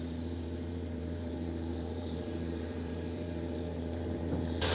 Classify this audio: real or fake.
fake